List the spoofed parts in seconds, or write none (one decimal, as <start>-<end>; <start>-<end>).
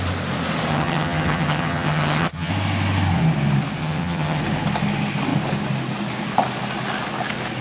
0.7-2.5; 3.8-4.4